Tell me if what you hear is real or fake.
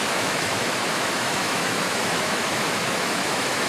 fake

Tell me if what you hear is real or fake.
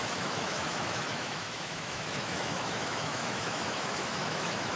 fake